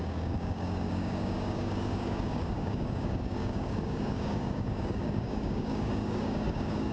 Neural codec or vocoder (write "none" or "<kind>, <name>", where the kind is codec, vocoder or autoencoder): codec, DAC